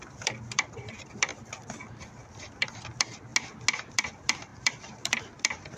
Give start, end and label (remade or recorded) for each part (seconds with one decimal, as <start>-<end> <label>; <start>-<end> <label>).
0.0-1.3 remade; 1.3-2.6 recorded; 2.6-3.3 remade; 3.3-3.9 recorded; 3.9-5.8 remade

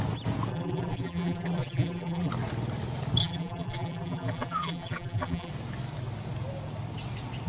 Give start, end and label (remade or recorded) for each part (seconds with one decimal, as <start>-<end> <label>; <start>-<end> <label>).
0.0-0.5 recorded; 0.5-2.3 remade; 2.3-3.2 recorded; 3.2-5.5 remade; 5.5-7.5 recorded

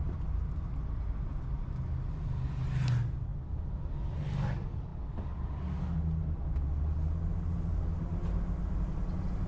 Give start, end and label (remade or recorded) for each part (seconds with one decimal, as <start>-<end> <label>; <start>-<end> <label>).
0.0-9.5 recorded

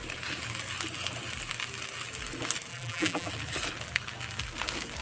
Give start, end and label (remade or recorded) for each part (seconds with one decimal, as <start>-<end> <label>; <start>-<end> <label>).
0.0-2.7 recorded; 2.7-3.3 remade; 3.3-5.0 recorded

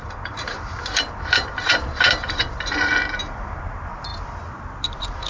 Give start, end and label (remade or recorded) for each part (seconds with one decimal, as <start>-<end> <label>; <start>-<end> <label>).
0.0-3.2 remade; 3.2-5.3 recorded

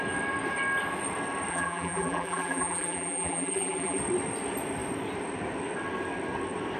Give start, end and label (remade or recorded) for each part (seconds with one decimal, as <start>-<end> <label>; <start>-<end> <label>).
0.0-1.5 recorded; 1.5-4.0 remade; 4.0-6.8 recorded

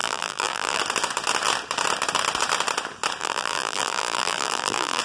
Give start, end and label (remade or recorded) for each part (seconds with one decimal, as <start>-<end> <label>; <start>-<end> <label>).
0.0-0.8 remade; 0.8-3.2 recorded; 3.2-5.0 remade

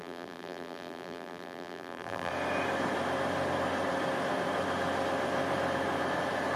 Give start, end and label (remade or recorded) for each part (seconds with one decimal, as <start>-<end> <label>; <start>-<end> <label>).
0.0-2.3 remade; 2.3-6.6 recorded